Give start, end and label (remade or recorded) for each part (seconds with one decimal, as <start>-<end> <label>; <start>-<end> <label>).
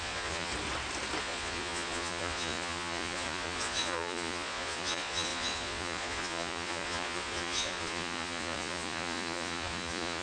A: 0.0-0.5 remade; 0.5-1.2 recorded; 1.2-10.2 remade